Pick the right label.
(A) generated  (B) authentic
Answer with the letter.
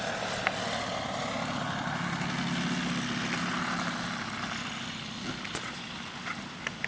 B